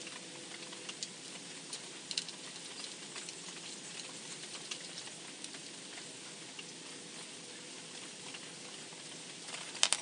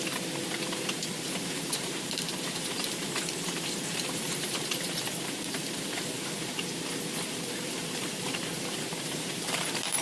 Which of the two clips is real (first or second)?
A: first